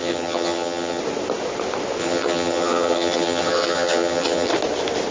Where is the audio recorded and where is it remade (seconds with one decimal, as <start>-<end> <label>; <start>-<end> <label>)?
0.0-1.0 remade; 1.0-2.0 recorded; 2.0-4.5 remade; 4.5-5.1 recorded